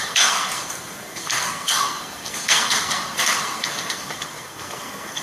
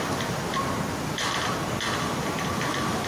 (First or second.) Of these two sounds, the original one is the second